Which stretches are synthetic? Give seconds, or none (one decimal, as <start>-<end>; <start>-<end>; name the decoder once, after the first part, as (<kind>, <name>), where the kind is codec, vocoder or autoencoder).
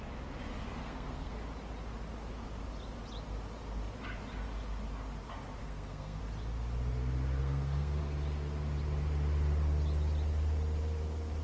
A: 0.8-1.3 (codec, SNAC); 5.6-6.2; 7.4-8.0